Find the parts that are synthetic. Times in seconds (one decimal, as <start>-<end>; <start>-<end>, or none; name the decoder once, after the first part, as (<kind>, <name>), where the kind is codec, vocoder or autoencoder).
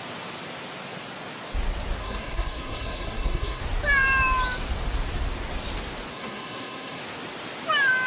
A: 2.0-3.6 (codec, SNAC); 6.1-7.0